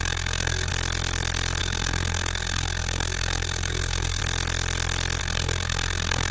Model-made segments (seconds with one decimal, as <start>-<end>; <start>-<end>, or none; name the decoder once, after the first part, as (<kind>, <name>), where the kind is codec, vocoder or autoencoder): 0.0-0.7 (codec, SNAC); 1.6-4.2; 5.2-6.3